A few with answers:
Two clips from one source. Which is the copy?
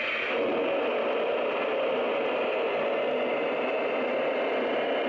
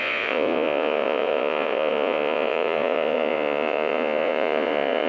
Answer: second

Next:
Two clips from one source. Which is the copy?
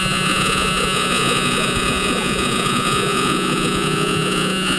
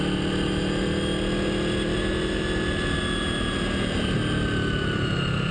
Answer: first